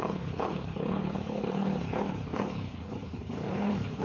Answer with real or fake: fake